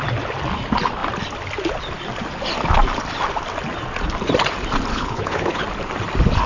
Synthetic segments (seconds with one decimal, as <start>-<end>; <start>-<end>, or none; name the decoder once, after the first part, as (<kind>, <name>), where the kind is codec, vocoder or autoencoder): 4.9-5.6 (codec, HILCodec)